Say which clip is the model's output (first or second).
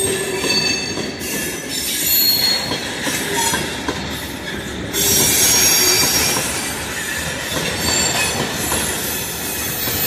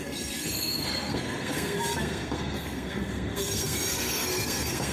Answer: second